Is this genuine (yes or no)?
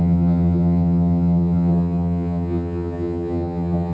no